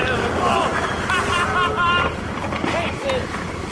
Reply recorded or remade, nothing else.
recorded